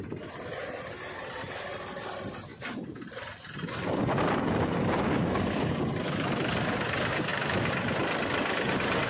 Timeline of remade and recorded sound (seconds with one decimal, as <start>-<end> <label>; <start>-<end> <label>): 0.0-9.1 recorded